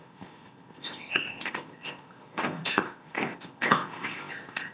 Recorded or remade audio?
remade